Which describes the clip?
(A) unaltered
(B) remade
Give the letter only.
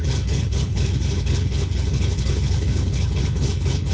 B